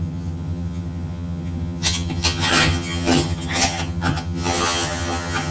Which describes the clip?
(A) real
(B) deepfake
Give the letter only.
B